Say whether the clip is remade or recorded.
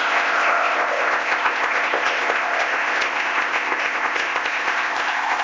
remade